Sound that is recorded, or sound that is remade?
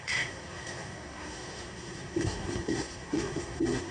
remade